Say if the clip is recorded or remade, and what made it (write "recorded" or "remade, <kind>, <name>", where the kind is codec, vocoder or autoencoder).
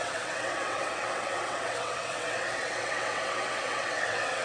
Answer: remade, vocoder, WaveNeXt